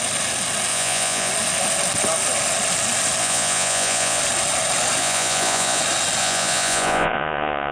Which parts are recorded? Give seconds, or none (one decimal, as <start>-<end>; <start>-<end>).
0.0-0.7; 1.3-3.2; 4.2-5.0; 5.8-6.2